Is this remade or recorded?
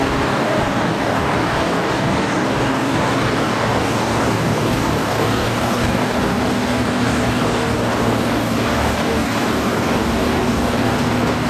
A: remade